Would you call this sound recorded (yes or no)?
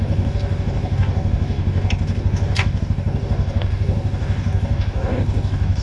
no